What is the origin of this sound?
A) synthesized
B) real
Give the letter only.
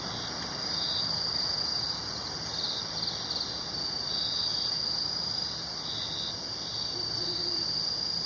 B